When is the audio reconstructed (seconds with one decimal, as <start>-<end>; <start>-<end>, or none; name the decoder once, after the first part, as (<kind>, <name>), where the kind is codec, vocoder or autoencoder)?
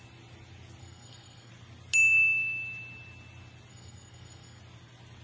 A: 0.8-1.5 (codec, SNAC); 3.7-4.6